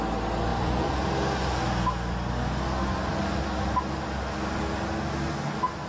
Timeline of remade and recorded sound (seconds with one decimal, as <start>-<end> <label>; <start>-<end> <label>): 0.0-0.5 recorded; 0.5-3.8 remade; 3.8-5.9 recorded